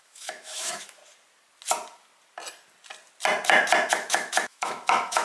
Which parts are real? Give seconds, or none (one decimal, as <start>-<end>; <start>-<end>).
1.0-3.9